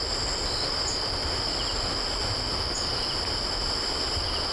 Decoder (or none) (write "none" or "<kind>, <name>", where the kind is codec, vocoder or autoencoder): none